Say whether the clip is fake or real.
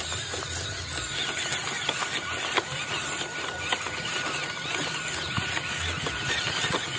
real